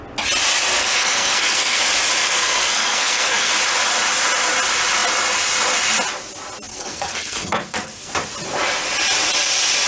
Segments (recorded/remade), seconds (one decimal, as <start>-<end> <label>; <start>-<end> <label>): 0.0-0.8 recorded; 0.8-1.8 remade; 1.8-2.2 recorded; 2.2-3.5 remade; 3.5-6.7 recorded; 6.7-8.1 remade; 8.1-9.9 recorded